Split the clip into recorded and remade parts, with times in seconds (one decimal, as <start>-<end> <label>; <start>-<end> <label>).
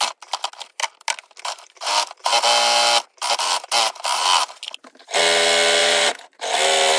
0.0-5.8 recorded; 5.8-6.4 remade; 6.4-7.0 recorded